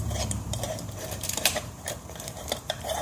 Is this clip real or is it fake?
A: fake